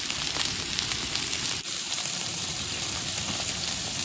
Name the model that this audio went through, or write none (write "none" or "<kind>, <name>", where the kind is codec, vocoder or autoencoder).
vocoder, BigVGAN v2